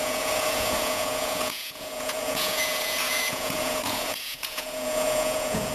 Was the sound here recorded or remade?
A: remade